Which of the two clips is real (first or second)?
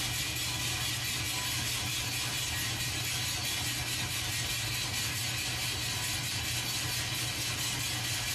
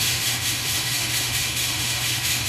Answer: first